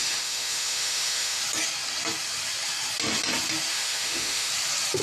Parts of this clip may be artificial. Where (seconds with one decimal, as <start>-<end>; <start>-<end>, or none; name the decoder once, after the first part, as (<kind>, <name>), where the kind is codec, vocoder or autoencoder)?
0.0-1.4 (autoencoder, DAC-VAE); 3.7-4.5